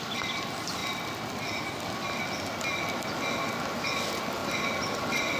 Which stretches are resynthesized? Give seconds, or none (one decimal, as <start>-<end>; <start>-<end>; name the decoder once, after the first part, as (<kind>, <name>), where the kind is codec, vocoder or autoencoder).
none